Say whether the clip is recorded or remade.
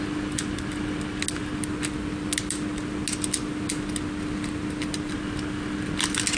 recorded